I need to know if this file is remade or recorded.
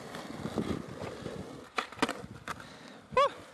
recorded